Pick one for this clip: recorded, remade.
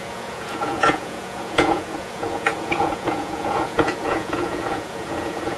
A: remade